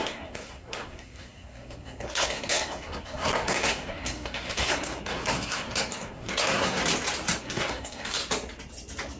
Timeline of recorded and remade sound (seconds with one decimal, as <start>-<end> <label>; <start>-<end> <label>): 0.0-6.8 remade; 6.8-7.4 recorded; 7.4-8.2 remade; 8.2-9.2 recorded

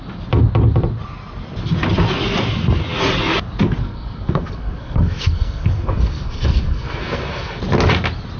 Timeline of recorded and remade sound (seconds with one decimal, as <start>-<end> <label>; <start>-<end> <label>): 0.0-3.8 recorded; 3.8-7.6 remade; 7.6-8.4 recorded

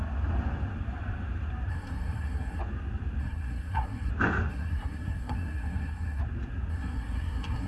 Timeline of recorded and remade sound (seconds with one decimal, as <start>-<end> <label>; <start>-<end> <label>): 0.0-1.7 recorded; 1.7-2.6 remade; 2.6-3.2 recorded; 3.2-4.1 remade; 4.1-4.5 recorded; 4.5-6.2 remade; 6.2-6.7 recorded; 6.7-7.7 remade

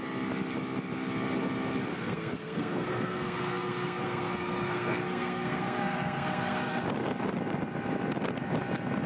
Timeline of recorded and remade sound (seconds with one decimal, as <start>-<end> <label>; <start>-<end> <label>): 0.0-1.9 recorded; 1.9-6.8 remade; 6.8-9.1 recorded

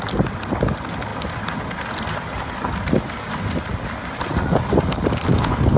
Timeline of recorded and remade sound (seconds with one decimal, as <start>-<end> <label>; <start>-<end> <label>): 0.0-5.8 recorded

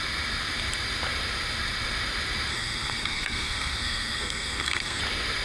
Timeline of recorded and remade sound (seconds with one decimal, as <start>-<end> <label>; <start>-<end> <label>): 0.0-2.5 recorded; 2.5-5.0 remade; 5.0-5.4 recorded

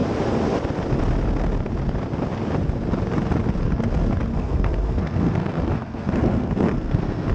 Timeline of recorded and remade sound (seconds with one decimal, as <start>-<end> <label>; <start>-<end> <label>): 0.0-4.3 recorded; 4.3-7.3 remade

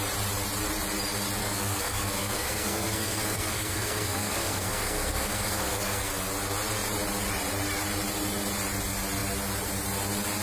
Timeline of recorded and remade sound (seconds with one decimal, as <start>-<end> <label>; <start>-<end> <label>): 0.0-1.4 recorded; 1.4-6.1 remade; 6.1-10.4 recorded